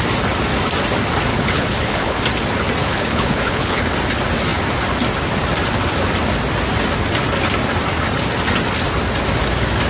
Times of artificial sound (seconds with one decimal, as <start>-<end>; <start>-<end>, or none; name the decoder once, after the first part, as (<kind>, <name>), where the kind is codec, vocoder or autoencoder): 1.3-2.2 (codec, HILCodec); 2.8-3.8